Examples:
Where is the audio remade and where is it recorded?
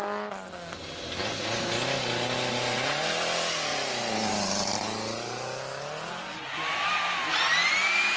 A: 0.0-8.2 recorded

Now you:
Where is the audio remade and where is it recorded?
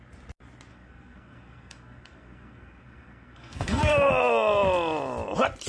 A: 0.0-0.7 recorded; 0.7-4.1 remade; 4.1-5.7 recorded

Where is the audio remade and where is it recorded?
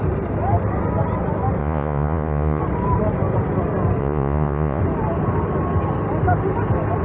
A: 0.0-1.6 recorded; 1.6-2.6 remade; 2.6-4.0 recorded; 4.0-4.8 remade; 4.8-7.0 recorded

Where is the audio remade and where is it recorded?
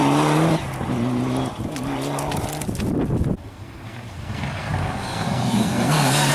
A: 0.0-3.4 recorded; 3.4-6.3 remade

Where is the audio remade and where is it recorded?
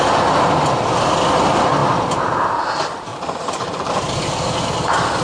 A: 0.0-3.1 recorded; 3.1-3.9 remade; 3.9-5.2 recorded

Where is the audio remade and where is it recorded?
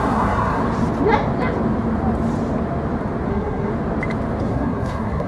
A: 0.0-0.6 remade; 0.6-3.3 recorded; 3.3-3.7 remade; 3.7-4.4 recorded; 4.4-5.3 remade